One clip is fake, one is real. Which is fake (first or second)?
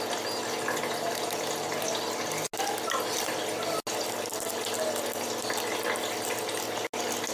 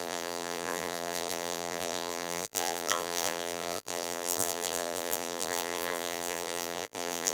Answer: second